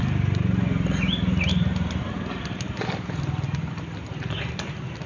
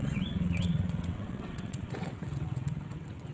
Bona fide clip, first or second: first